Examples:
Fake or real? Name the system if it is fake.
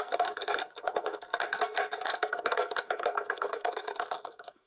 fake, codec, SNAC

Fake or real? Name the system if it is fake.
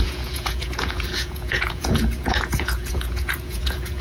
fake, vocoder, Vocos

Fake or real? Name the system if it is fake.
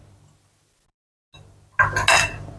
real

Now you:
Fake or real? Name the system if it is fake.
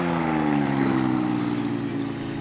real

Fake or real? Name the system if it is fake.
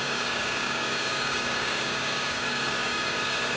fake, codec, DAC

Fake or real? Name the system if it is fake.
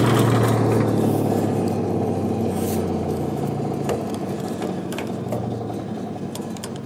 real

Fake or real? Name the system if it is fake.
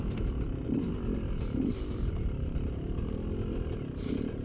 real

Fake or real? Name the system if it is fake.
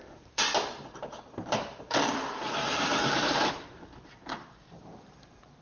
fake, vocoder, BigVGAN v2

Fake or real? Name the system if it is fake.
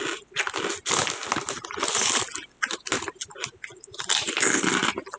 real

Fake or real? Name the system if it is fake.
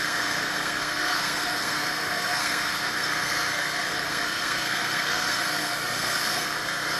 fake, codec, SNAC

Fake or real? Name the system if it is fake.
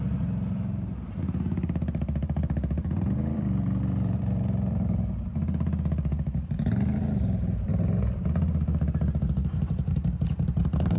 fake, vocoder, BigVGAN v2